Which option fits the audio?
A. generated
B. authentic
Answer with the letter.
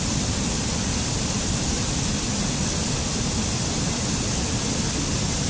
B